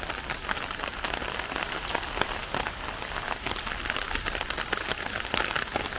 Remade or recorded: recorded